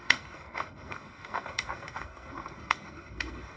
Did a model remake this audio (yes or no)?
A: yes